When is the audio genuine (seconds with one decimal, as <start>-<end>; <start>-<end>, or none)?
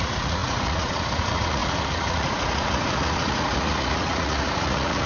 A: none